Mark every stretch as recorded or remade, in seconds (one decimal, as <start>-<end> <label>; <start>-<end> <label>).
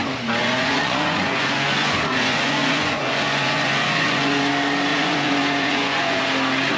0.0-0.4 recorded; 0.4-4.5 remade; 4.5-4.9 recorded; 4.9-6.2 remade; 6.2-6.8 recorded